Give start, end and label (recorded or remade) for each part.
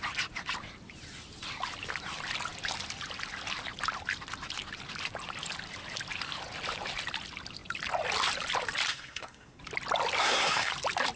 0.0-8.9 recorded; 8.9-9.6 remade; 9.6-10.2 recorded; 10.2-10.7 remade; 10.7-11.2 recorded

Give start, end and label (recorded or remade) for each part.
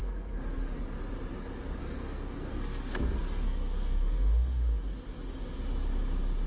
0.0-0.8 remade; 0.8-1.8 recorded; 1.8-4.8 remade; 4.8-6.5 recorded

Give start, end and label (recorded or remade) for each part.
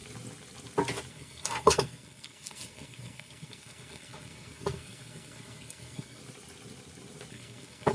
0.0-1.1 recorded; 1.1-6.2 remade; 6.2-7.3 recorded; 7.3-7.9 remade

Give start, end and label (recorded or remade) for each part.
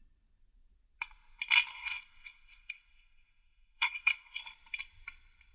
0.0-1.7 recorded; 1.7-4.4 remade; 4.4-5.5 recorded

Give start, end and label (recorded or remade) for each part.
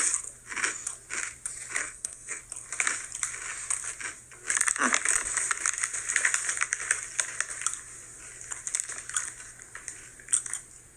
0.0-1.8 recorded; 1.8-2.4 remade; 2.4-11.0 recorded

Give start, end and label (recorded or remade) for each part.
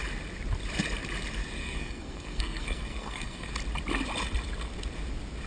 0.0-1.6 recorded; 1.6-3.5 remade; 3.5-5.5 recorded